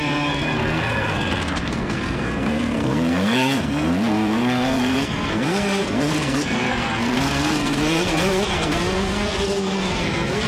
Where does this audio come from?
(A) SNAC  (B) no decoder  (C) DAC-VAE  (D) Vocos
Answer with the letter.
A